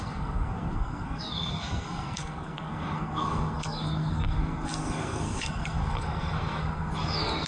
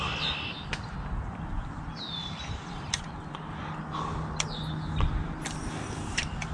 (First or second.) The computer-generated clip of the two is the first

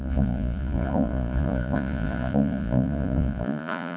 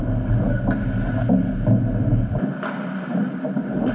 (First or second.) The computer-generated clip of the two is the first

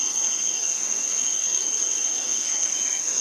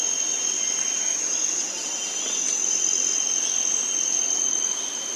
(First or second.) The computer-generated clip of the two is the first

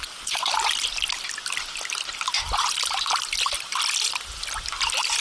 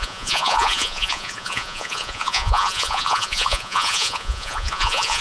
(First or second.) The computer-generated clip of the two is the second